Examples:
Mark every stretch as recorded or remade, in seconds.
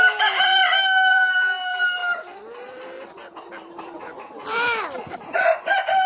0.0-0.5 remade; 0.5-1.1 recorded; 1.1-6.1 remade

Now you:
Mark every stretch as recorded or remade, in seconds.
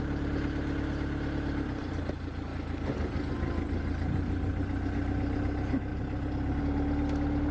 0.0-7.5 recorded